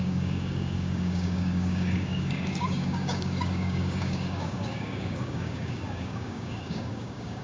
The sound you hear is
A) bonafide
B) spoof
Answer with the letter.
B